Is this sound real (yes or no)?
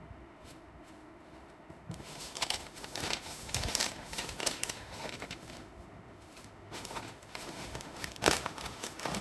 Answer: no